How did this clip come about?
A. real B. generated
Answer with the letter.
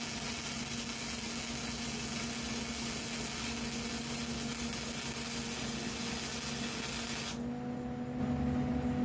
A